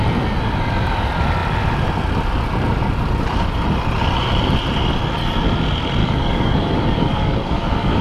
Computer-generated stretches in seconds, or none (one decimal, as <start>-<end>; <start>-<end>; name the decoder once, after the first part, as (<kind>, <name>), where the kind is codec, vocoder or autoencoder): 6.0-8.0 (codec, DAC)